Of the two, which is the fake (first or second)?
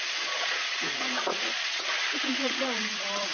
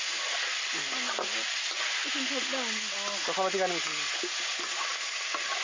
first